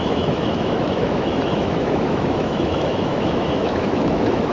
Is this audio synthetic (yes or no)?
yes